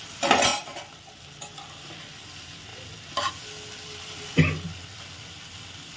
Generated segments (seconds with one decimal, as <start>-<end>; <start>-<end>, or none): 0.5-1.2; 2.7-3.3